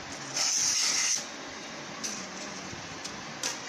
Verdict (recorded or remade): recorded